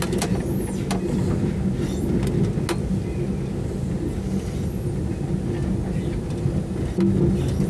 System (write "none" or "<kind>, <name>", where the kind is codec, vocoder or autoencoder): none